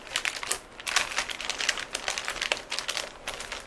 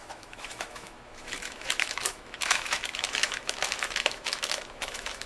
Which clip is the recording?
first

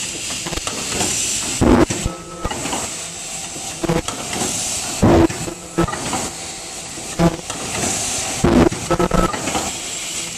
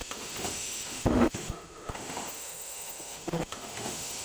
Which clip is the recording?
first